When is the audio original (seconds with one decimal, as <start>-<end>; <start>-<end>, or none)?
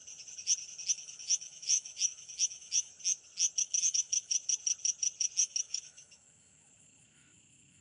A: 0.0-0.9; 2.9-3.6; 4.3-5.4